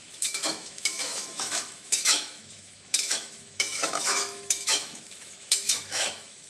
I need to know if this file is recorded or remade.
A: remade